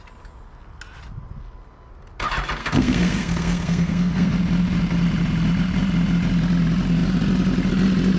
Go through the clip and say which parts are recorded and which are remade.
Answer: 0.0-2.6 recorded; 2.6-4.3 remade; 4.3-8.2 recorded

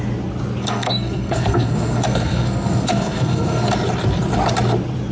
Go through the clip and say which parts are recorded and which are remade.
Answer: 0.0-0.6 recorded; 0.6-3.7 remade; 3.7-5.1 recorded

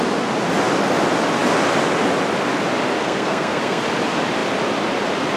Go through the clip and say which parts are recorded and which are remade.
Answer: 0.0-3.0 recorded; 3.0-3.8 remade; 3.8-5.4 recorded